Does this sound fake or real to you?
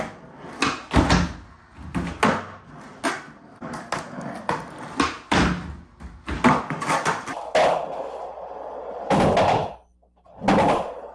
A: real